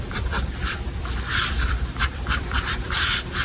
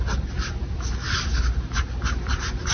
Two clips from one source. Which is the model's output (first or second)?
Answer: first